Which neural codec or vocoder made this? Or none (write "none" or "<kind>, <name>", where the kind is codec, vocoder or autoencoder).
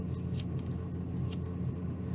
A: none